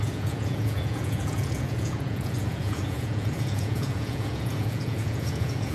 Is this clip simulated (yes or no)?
yes